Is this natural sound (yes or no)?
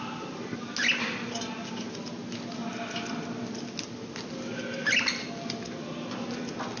yes